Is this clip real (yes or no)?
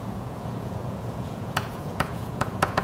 no